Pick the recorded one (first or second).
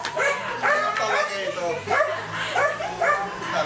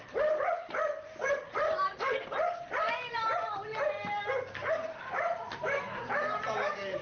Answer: first